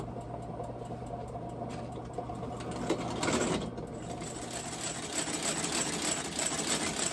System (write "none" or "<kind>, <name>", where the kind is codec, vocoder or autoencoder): none